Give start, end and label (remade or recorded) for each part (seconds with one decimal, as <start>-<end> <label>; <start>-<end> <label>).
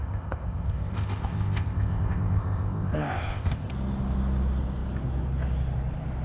0.0-3.7 remade; 3.7-6.2 recorded